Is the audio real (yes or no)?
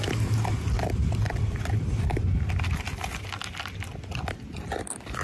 yes